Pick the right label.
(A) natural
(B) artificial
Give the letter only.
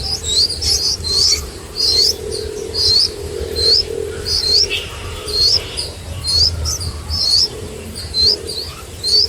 B